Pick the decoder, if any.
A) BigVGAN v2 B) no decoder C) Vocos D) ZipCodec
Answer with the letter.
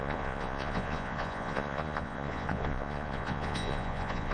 C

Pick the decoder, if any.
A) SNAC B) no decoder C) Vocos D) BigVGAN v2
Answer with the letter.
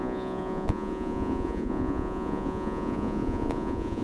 C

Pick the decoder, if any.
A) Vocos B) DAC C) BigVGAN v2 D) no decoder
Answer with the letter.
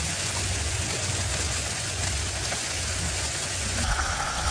A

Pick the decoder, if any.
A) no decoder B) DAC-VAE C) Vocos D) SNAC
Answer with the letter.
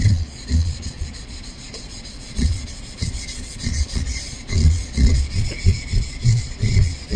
C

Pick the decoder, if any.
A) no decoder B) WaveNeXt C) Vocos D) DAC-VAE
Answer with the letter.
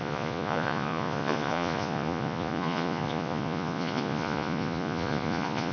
C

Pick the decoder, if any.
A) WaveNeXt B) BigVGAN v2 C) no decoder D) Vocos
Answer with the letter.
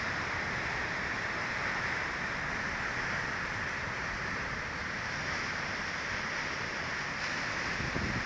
C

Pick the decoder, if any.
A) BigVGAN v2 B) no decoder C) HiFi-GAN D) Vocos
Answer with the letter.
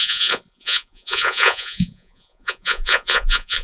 D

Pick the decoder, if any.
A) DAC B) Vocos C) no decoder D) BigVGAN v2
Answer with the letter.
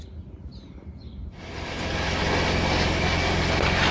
C